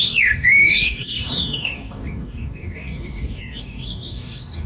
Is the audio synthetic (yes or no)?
yes